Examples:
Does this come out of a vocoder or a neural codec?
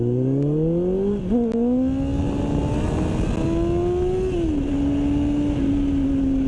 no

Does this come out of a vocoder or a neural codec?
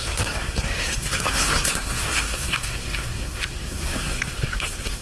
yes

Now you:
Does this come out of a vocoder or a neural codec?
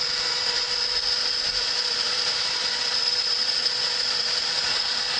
yes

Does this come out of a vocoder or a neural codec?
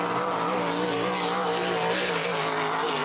no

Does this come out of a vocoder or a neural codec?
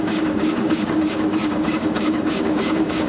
yes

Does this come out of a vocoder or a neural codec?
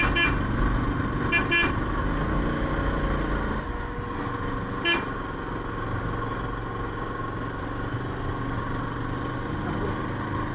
no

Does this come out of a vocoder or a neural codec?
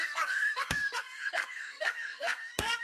yes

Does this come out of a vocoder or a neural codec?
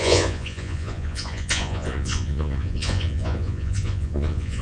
yes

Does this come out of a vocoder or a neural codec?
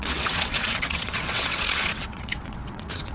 yes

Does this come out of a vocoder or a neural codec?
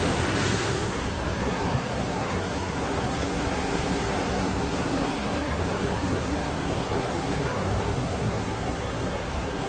yes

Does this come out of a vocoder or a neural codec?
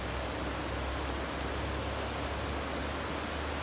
no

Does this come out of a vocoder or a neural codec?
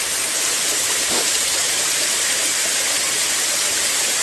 no